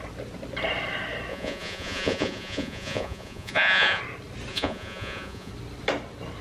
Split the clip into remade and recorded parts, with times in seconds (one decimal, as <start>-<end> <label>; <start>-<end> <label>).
0.0-1.3 recorded; 1.3-4.0 remade; 4.0-4.5 recorded; 4.5-5.5 remade; 5.5-6.4 recorded